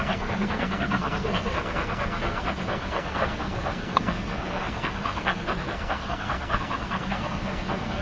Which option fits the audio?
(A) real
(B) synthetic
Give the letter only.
B